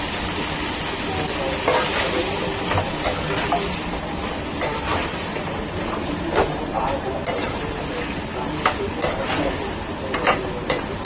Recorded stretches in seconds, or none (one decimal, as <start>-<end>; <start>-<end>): 0.0-4.9; 7.8-11.1